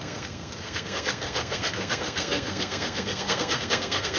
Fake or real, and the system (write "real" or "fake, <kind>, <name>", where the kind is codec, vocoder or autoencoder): fake, codec, SNAC